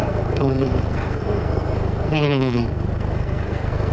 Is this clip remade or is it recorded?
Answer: remade